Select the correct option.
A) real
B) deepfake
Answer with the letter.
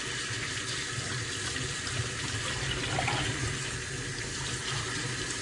A